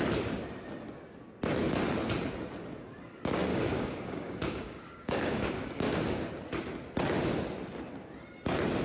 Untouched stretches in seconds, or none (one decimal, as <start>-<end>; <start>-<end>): 0.0-3.5; 6.3-8.8